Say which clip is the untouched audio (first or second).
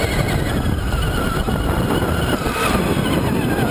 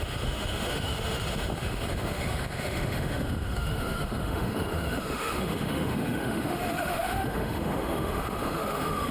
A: first